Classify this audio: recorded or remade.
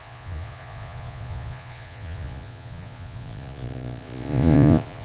remade